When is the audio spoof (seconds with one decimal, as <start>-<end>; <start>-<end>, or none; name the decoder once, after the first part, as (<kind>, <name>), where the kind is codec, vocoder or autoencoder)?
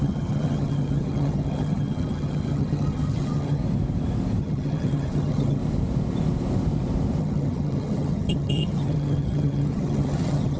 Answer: 0.0-3.6 (vocoder, HiFi-GAN); 4.4-5.6; 7.2-10.6